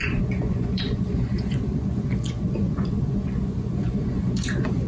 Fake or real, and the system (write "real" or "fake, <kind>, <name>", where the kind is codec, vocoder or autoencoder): fake, vocoder, Vocos